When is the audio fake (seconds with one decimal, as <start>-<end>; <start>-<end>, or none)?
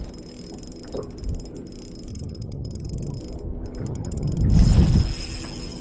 2.1-3.2; 3.8-4.4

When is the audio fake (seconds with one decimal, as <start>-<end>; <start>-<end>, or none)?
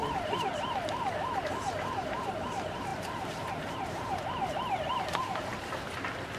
0.0-2.4; 2.9-5.0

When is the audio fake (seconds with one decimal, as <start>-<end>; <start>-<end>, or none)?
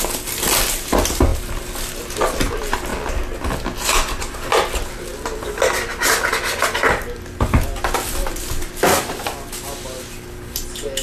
none